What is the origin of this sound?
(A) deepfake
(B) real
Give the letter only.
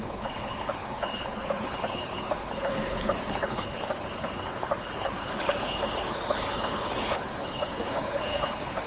A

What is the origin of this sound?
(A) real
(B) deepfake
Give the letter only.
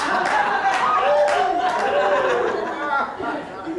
A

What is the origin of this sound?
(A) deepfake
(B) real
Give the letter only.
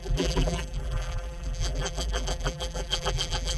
A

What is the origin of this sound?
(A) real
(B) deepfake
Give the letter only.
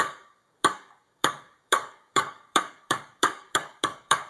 B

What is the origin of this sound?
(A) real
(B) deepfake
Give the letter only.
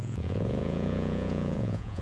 B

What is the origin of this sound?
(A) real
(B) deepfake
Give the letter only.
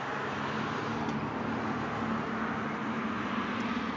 A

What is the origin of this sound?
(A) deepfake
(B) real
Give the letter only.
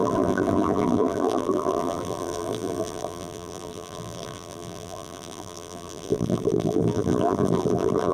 A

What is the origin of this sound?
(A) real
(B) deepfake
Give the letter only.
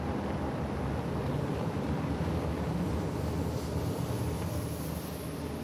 A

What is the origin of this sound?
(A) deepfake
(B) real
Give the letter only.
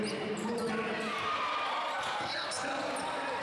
B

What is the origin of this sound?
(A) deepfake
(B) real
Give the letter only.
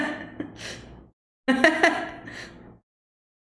B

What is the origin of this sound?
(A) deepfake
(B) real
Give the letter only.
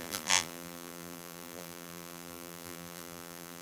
A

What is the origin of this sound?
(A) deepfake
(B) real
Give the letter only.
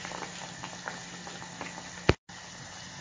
B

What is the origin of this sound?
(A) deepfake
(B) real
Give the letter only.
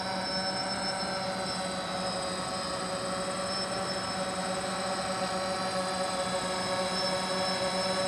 B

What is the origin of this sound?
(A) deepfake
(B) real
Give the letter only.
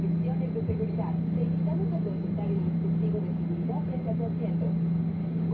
B